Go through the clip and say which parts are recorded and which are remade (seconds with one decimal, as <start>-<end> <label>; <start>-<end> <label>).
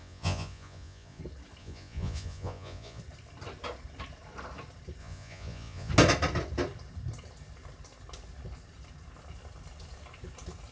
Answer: 0.0-1.2 remade; 1.2-1.6 recorded; 1.6-3.0 remade; 3.0-5.0 recorded; 5.0-5.9 remade; 5.9-10.7 recorded